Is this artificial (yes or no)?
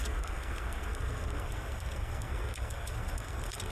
yes